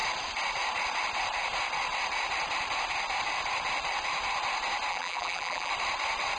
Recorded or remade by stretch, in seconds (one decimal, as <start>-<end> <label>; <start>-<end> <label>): 0.0-4.9 recorded; 4.9-5.7 remade; 5.7-6.4 recorded